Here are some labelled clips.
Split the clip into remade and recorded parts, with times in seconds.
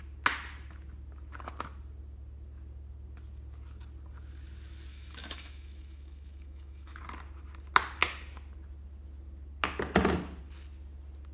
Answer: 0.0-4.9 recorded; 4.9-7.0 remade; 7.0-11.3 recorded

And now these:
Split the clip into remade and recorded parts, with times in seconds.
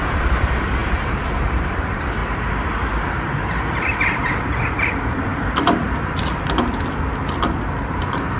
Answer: 0.0-2.2 remade; 2.2-3.1 recorded; 3.1-5.3 remade; 5.3-7.9 recorded; 7.9-8.4 remade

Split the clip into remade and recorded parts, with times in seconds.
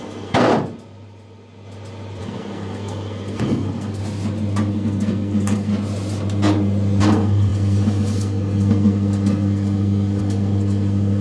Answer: 0.0-0.5 remade; 0.5-2.2 recorded; 2.2-4.0 remade; 4.0-4.7 recorded; 4.7-5.7 remade; 5.7-7.0 recorded; 7.0-11.2 remade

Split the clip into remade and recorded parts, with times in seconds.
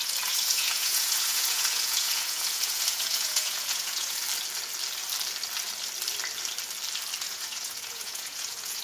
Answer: 0.0-4.2 remade; 4.2-7.2 recorded; 7.2-8.8 remade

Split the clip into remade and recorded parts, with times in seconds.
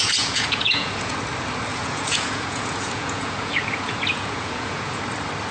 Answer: 0.0-1.2 remade; 1.2-1.7 recorded; 1.7-5.0 remade; 5.0-5.5 recorded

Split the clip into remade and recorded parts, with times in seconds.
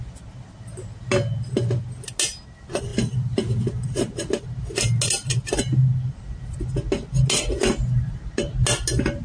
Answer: 0.0-9.2 recorded